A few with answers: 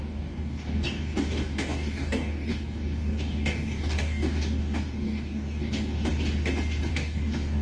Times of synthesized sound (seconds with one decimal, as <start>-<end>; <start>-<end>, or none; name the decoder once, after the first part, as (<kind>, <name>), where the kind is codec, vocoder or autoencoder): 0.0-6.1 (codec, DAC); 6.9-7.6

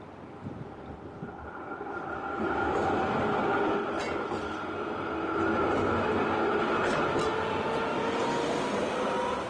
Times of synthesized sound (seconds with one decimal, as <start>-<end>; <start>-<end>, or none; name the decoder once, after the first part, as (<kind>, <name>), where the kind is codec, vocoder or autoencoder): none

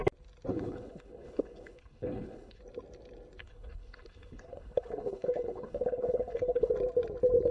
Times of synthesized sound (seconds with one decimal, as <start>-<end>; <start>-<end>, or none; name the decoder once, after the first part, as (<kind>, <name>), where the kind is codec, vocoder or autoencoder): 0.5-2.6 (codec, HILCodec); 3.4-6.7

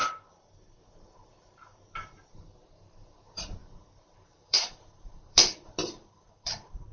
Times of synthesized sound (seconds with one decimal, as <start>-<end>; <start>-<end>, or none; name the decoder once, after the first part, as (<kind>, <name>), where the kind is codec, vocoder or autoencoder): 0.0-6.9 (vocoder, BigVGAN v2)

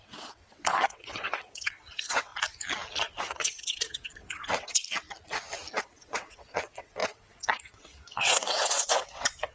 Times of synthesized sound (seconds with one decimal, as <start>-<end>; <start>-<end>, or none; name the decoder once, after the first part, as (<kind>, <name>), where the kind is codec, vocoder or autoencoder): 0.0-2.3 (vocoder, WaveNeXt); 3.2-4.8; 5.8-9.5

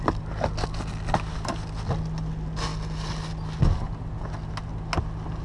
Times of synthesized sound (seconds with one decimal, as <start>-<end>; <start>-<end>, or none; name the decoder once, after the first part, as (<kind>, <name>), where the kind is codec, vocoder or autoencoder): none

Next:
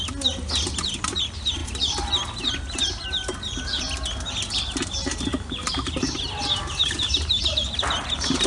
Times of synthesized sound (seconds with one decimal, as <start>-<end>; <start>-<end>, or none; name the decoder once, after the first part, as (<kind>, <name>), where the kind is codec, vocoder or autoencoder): 5.3-8.5 (vocoder, BigVGAN v2)